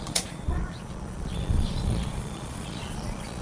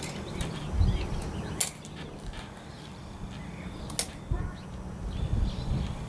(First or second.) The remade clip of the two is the first